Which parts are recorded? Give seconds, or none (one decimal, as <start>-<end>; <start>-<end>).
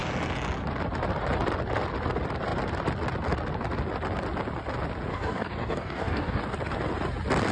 0.0-5.1; 6.4-7.5